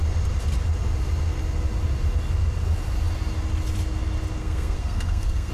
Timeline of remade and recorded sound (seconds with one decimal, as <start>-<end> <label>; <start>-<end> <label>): 0.0-4.4 recorded; 4.4-5.5 remade